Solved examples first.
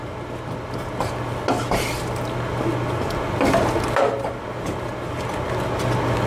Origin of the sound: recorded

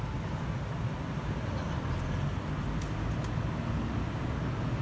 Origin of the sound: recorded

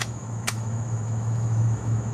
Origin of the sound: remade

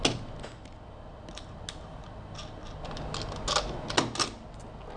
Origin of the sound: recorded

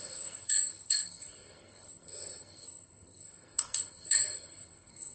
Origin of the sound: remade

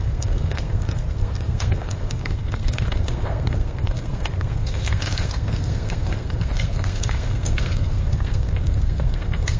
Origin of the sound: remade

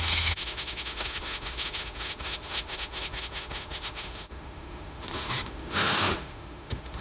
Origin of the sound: remade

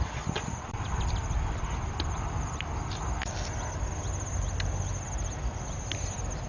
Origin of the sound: recorded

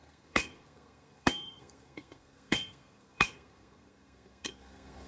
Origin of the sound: remade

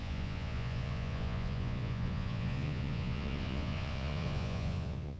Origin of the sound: remade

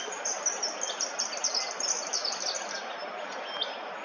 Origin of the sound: recorded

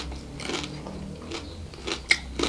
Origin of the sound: recorded